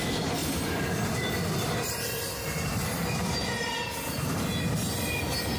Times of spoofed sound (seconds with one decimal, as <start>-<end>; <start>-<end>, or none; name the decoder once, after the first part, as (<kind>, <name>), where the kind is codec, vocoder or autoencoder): none